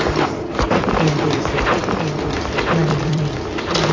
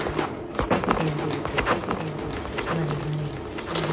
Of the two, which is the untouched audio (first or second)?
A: second